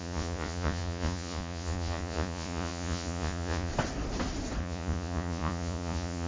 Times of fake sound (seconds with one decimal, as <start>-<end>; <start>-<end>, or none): 0.0-3.7; 4.6-6.3